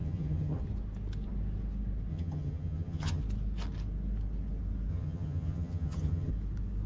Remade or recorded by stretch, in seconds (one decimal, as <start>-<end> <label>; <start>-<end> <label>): 0.0-0.6 remade; 0.6-2.1 recorded; 2.1-3.2 remade; 3.2-4.9 recorded; 4.9-6.3 remade; 6.3-6.9 recorded